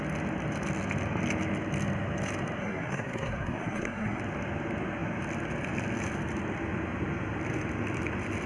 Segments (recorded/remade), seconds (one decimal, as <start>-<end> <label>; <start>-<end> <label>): 0.0-2.6 recorded; 2.6-4.2 remade; 4.2-8.5 recorded